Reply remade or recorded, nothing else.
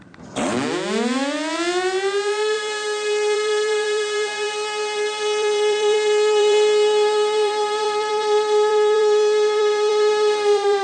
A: remade